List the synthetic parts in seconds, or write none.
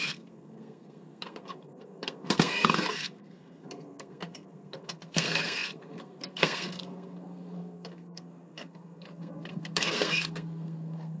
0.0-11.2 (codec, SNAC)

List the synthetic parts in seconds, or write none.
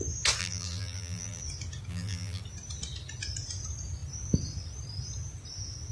0.4-1.4 (vocoder, BigVGAN v2); 1.9-2.4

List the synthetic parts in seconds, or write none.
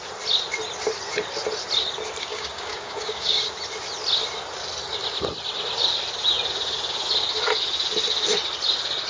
2.3-3.5 (codec, DAC)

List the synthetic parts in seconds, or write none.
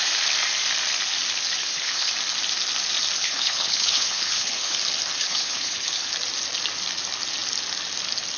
1.6-2.1 (codec, HILCodec); 3.2-4.8; 5.2-6.1